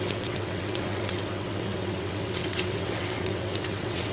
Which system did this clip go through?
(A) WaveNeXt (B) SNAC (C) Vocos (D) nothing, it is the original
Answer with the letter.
A